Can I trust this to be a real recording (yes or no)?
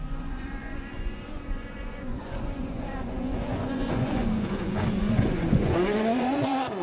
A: no